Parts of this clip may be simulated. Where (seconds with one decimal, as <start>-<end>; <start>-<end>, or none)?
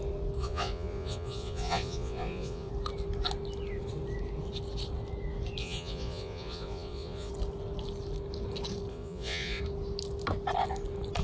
0.4-2.7; 5.6-7.3; 8.9-9.6